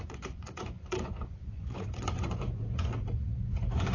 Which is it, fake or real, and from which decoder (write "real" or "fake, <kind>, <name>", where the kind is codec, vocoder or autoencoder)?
fake, vocoder, Vocos